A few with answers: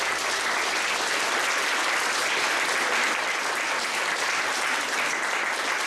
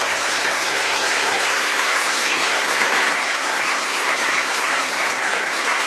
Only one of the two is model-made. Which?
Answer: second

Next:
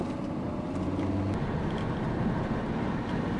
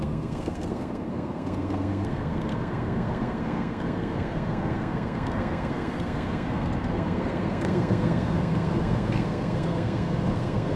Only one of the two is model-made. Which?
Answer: second